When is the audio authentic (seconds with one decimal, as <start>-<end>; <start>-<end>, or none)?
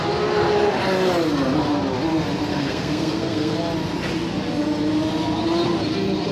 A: 0.0-2.5; 3.6-6.3